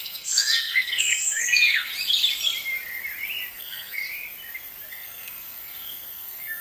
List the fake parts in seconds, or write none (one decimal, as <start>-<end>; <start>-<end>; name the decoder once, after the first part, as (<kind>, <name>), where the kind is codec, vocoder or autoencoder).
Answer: 0.0-1.9 (codec, SNAC); 3.5-4.0; 4.9-6.6